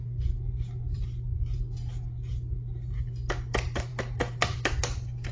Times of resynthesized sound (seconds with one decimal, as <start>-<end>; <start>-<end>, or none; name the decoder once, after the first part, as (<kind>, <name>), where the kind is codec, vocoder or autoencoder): none